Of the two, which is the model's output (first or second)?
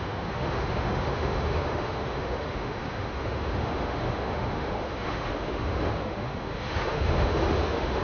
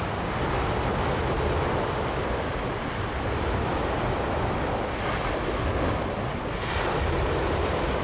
first